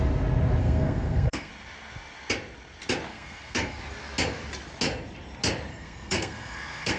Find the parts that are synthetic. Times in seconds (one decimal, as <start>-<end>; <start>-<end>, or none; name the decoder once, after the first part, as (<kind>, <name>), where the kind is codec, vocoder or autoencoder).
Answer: 0.6-1.5 (codec, SNAC); 3.1-3.8; 5.7-7.0